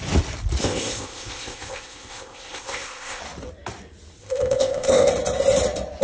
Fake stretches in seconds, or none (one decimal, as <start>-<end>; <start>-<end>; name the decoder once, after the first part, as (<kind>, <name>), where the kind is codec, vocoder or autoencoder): 0.6-3.2 (codec, ZipCodec); 4.2-5.1